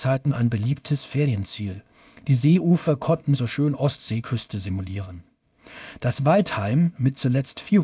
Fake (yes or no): yes